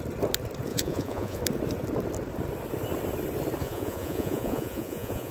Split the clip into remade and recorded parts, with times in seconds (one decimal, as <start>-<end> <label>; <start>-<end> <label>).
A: 0.0-0.7 recorded; 0.7-1.4 remade; 1.4-3.6 recorded; 3.6-5.3 remade